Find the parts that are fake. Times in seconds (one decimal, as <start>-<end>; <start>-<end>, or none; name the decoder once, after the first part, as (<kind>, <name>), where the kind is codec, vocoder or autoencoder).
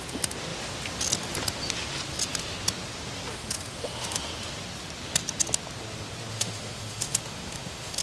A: 3.3-4.3 (autoencoder, DAC-VAE); 6.3-8.0